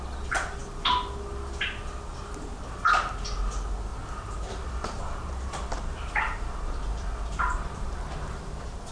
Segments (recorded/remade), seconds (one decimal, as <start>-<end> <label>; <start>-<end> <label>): 0.0-3.9 recorded; 3.9-8.9 remade